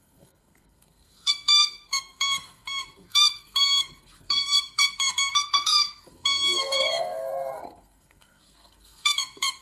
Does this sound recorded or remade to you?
remade